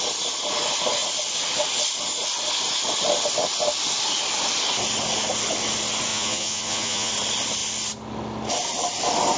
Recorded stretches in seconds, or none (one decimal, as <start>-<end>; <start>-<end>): 0.0-6.1; 7.1-9.4